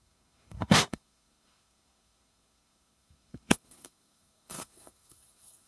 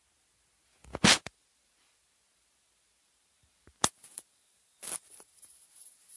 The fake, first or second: first